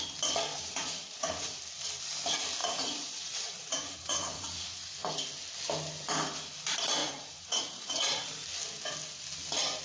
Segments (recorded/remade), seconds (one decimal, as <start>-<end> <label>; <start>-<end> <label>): 0.0-0.5 recorded; 0.5-1.6 remade; 1.6-2.6 recorded; 2.6-5.1 remade; 5.1-7.0 recorded; 7.0-8.4 remade; 8.4-9.8 recorded